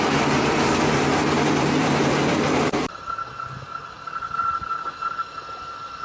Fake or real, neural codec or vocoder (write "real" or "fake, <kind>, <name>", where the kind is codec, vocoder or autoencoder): fake, vocoder, BigVGAN v2